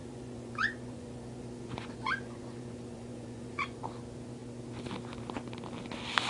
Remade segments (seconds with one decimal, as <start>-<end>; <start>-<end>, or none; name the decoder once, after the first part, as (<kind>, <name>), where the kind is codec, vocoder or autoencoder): 0.0-3.8 (vocoder, Vocos)